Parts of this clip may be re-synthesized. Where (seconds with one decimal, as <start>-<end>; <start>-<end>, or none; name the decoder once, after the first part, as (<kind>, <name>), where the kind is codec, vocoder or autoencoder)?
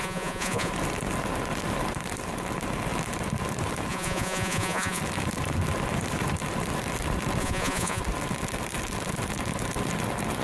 0.0-0.7 (vocoder, Vocos); 3.9-5.0; 7.4-8.0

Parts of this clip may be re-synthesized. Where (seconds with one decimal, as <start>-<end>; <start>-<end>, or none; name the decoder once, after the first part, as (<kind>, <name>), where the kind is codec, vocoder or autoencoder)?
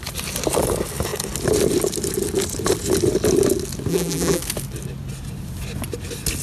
3.9-4.4 (vocoder, BigVGAN v2)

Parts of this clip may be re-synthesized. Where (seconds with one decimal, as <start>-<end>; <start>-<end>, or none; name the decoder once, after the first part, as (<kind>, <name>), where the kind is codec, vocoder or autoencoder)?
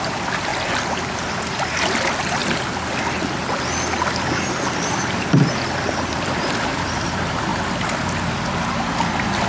0.0-0.5 (vocoder, BigVGAN v2); 1.4-2.4; 6.1-7.5; 8.6-9.5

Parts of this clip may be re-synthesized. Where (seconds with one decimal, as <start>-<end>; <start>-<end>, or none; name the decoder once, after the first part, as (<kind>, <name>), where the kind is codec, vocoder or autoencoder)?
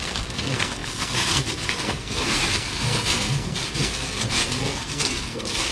0.0-5.7 (codec, SNAC)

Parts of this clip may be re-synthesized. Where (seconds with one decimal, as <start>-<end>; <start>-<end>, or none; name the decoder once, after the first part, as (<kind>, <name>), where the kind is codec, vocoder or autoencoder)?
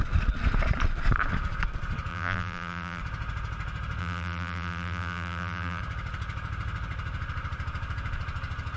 2.1-3.0 (vocoder, BigVGAN v2); 4.0-5.8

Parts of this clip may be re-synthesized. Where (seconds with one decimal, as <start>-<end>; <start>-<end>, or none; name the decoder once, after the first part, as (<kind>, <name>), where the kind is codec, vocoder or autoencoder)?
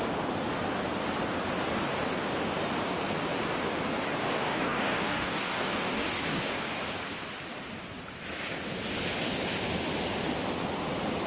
4.2-6.8 (codec, DAC)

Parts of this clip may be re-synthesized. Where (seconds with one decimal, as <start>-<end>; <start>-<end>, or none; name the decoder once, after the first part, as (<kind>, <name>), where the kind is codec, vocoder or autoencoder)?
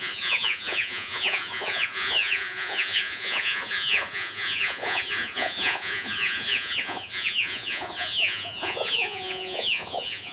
0.0-10.3 (vocoder, Vocos)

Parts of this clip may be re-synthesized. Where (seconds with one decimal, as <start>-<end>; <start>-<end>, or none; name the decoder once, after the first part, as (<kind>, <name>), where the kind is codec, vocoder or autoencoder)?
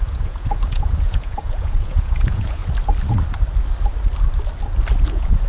0.0-2.6 (vocoder, Vocos); 5.1-5.5